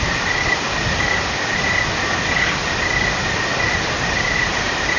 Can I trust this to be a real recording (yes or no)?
yes